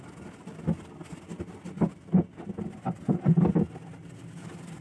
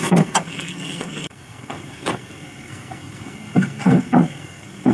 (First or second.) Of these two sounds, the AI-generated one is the second